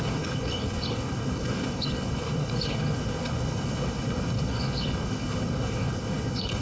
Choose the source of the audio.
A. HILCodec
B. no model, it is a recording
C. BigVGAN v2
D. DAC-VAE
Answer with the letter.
A